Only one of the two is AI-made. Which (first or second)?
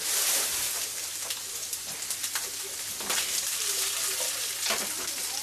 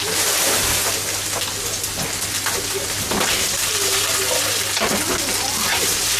first